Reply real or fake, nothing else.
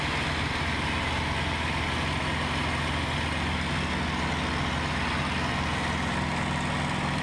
real